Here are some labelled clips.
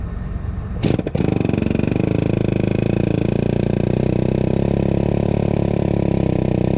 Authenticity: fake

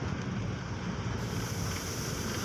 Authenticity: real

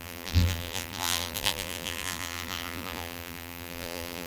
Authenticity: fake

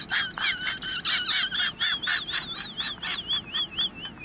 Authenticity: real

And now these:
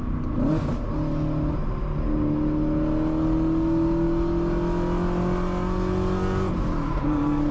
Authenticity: real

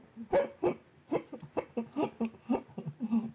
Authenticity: real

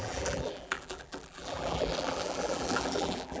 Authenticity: fake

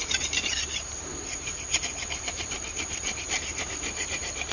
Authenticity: fake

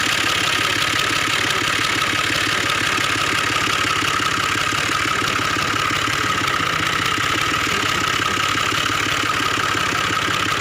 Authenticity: real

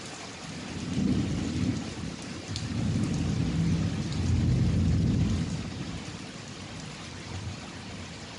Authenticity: real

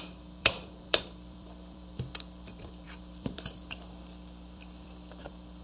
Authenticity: fake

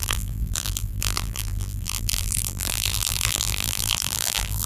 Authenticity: fake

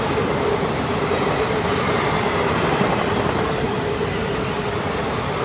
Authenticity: real